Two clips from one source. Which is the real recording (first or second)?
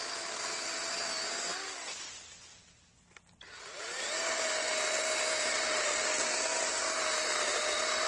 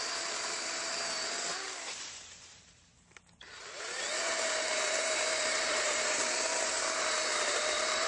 first